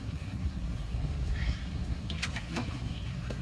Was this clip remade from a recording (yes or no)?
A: yes